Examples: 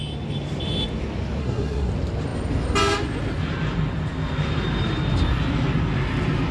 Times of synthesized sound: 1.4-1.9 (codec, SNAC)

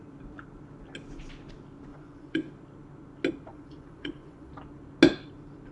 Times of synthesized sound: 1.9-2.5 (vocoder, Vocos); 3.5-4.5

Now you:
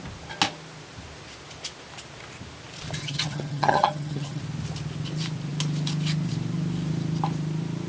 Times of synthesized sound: 3.0-4.4 (vocoder, HiFi-GAN)

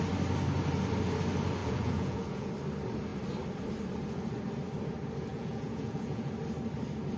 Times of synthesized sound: 1.6-2.5 (vocoder, Vocos); 5.3-6.3

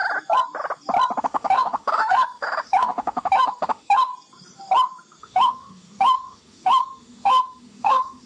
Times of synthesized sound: 1.2-4.1 (autoencoder, DAC-VAE); 5.2-8.3

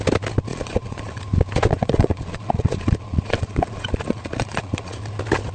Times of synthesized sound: 0.5-1.2 (vocoder, Vocos); 1.7-5.0

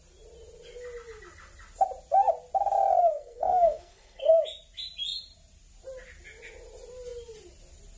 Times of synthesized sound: 3.1-4.3 (codec, SNAC)